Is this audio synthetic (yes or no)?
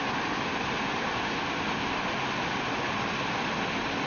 no